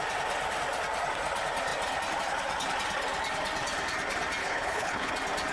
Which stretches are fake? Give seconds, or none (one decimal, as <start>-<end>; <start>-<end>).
4.4-5.1